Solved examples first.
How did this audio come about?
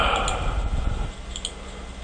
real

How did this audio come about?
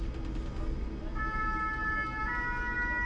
real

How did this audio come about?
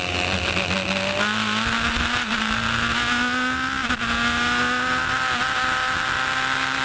real